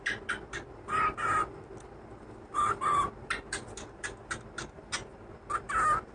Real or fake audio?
real